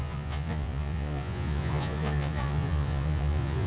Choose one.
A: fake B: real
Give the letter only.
A